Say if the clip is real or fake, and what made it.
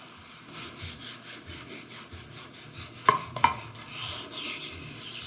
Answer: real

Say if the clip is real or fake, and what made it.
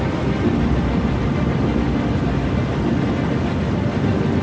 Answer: real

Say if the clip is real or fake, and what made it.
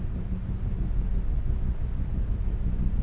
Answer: real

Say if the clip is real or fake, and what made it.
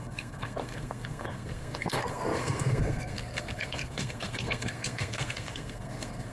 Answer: fake, codec, SNAC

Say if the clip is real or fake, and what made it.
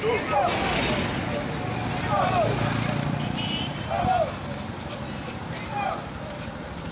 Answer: real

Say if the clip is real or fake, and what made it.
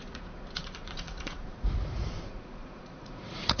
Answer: fake, vocoder, Vocos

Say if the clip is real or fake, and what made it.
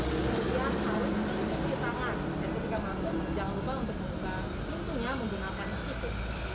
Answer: real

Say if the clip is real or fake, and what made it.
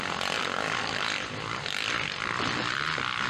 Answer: real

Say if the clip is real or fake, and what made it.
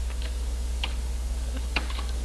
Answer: fake, codec, DAC